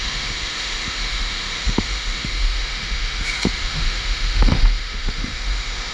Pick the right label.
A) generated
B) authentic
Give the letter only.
A